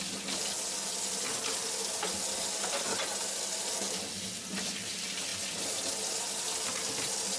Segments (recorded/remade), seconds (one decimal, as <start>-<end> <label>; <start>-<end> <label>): 0.0-7.4 recorded